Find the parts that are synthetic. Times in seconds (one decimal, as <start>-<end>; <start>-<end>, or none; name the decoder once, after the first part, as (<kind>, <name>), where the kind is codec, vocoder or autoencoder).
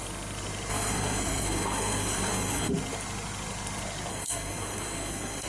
0.7-2.7 (codec, SNAC); 4.1-5.5